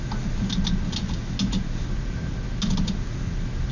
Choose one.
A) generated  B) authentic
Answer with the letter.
B